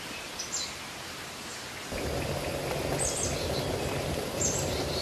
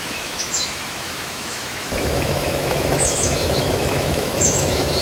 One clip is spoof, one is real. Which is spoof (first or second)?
second